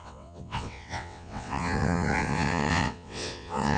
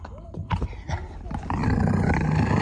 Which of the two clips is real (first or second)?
second